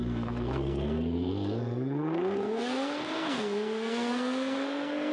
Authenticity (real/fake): fake